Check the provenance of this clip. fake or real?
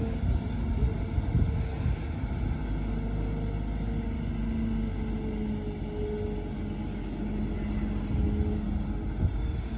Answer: real